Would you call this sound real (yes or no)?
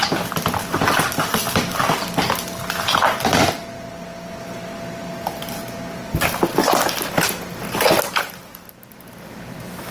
yes